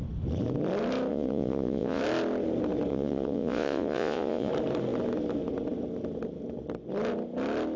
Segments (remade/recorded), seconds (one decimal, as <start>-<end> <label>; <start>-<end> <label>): 0.0-1.1 recorded; 1.1-2.0 remade; 2.0-2.9 recorded; 2.9-4.5 remade; 4.5-7.8 recorded